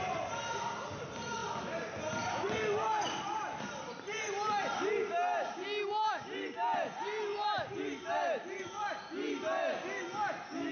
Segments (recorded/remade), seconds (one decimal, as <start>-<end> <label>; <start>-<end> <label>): 0.0-10.7 recorded